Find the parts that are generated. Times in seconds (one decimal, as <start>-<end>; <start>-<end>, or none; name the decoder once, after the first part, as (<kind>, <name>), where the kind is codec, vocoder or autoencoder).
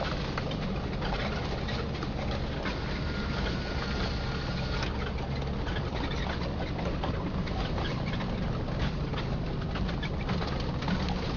none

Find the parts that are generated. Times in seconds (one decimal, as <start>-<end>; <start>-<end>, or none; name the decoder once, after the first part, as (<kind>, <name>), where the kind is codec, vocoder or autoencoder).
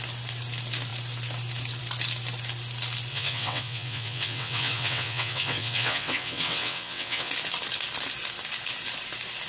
3.1-7.3 (vocoder, WaveNeXt)